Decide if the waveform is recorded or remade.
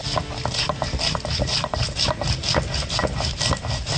recorded